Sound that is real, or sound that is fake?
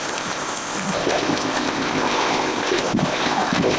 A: fake